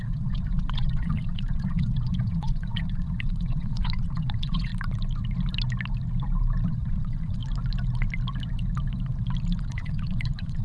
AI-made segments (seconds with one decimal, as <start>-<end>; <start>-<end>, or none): 0.0-4.7; 6.7-7.4; 9.6-10.6